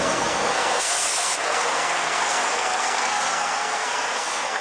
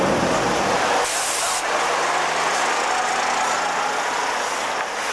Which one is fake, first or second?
first